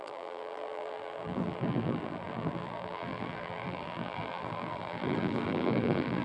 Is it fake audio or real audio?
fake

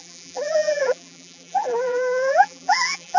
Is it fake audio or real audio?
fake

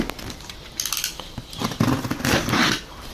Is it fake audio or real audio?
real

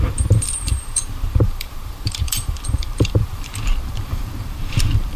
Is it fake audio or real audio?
fake